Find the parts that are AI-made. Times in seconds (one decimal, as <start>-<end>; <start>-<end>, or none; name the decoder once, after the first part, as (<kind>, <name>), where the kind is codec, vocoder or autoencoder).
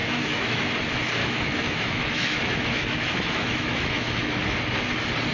0.0-0.6 (autoencoder, DAC-VAE); 1.2-4.4